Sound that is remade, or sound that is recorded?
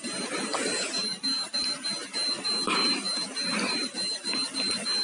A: recorded